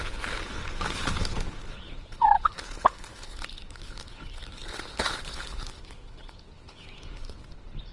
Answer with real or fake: fake